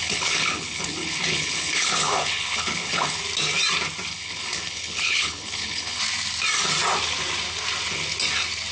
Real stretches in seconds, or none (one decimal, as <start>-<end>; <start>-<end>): 3.2-4.1; 6.0-8.7